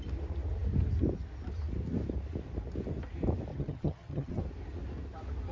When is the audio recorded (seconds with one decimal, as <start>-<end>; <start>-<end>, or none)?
0.0-3.5; 4.4-5.5